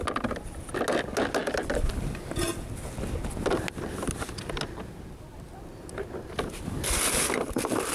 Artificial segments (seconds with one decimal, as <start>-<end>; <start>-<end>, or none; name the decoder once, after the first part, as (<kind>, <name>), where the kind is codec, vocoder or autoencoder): none